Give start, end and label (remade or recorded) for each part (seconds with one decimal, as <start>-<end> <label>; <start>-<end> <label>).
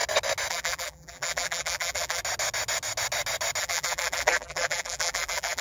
0.0-0.5 recorded; 0.5-2.2 remade; 2.2-3.6 recorded; 3.6-5.6 remade